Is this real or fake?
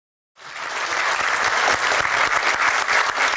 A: real